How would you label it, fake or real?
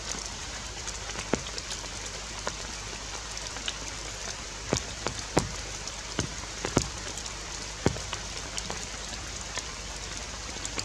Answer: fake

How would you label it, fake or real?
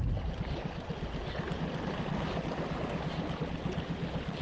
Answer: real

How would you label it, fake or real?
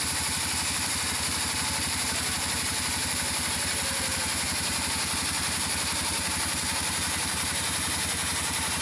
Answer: fake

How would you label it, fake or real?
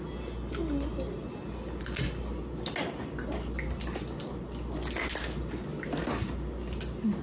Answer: real